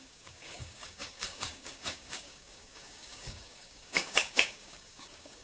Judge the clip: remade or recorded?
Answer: remade